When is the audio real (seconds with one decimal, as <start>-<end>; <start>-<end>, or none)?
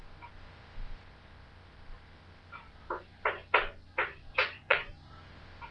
0.0-4.4; 4.9-5.7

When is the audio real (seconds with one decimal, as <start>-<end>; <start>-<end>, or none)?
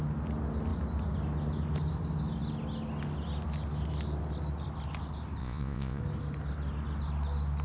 0.0-5.4; 6.0-7.6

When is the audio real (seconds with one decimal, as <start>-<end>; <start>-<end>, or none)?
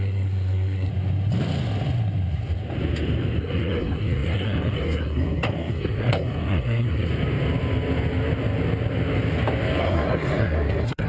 0.9-3.4; 7.1-9.8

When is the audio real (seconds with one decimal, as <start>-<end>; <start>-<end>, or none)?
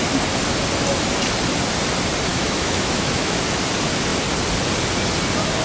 0.0-2.3; 3.4-5.6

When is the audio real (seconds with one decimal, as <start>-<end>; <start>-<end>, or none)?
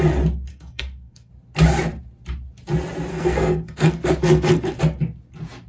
0.0-0.5; 1.3-3.1; 4.8-5.7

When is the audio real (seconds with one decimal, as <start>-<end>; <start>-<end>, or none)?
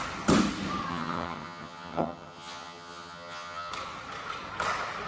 0.0-0.9; 3.7-5.1